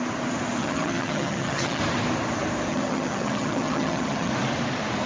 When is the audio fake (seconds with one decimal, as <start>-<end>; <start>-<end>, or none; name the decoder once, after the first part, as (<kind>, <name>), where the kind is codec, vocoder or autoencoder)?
0.6-1.8 (vocoder, HiFi-GAN); 2.7-4.3